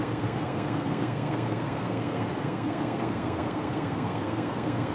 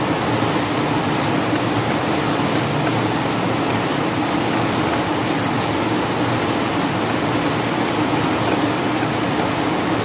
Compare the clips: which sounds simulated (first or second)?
first